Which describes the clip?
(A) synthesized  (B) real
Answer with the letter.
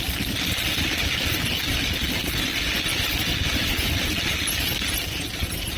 B